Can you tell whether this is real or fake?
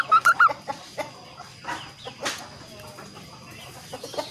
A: real